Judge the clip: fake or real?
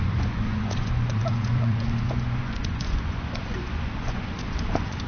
fake